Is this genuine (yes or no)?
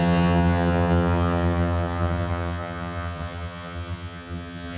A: no